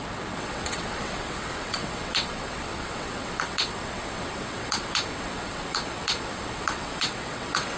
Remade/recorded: remade